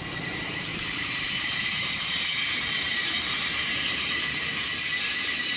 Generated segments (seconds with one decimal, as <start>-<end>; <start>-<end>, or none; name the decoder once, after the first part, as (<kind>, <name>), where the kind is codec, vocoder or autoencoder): 0.7-4.1 (vocoder, BigVGAN v2)